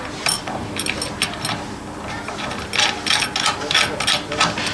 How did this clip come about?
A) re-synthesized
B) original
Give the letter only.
B